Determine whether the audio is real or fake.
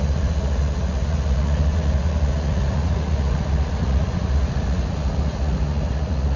fake